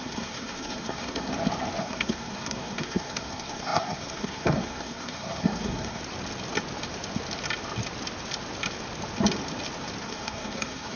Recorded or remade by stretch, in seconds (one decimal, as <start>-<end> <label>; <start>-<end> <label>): 0.0-1.3 remade; 1.3-1.8 recorded; 1.8-6.0 remade; 6.0-10.0 recorded; 10.0-11.0 remade